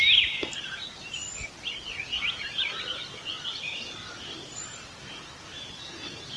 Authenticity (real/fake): real